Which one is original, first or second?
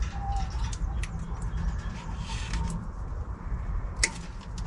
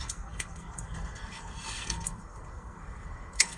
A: first